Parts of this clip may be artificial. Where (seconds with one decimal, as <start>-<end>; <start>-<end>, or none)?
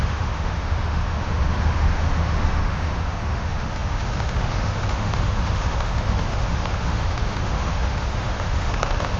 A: 0.0-9.2